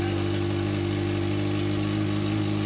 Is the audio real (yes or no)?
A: yes